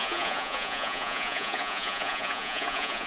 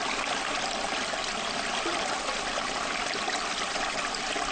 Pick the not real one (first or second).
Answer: first